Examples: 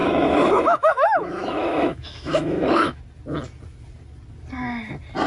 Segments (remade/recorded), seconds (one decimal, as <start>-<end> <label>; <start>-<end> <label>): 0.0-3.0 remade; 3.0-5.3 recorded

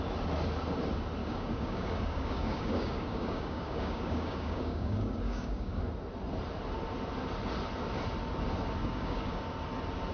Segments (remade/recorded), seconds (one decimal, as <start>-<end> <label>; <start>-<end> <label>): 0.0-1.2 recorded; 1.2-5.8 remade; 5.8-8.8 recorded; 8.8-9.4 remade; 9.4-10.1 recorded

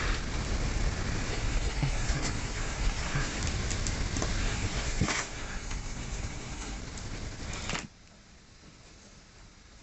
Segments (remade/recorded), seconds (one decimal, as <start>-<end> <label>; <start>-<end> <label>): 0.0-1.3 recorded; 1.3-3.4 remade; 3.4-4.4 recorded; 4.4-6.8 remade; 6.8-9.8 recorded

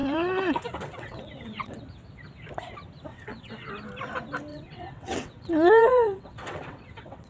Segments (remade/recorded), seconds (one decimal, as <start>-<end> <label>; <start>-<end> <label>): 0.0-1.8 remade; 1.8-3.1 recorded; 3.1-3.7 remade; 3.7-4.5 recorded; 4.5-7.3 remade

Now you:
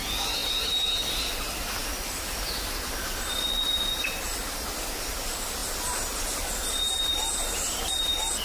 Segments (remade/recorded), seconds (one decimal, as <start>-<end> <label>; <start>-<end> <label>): 0.0-8.4 recorded